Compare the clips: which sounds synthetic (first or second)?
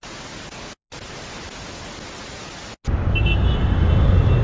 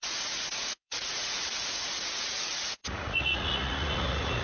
second